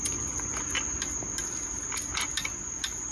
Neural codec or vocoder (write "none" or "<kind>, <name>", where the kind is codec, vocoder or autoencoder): none